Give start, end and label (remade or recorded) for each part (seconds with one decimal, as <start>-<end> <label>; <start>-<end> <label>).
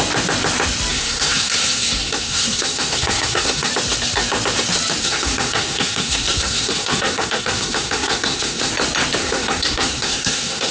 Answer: 0.0-0.9 recorded; 0.9-3.7 remade; 3.7-5.0 recorded; 5.0-8.7 remade; 8.7-9.2 recorded; 9.2-10.7 remade